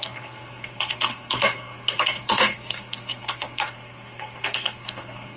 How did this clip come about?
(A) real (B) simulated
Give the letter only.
B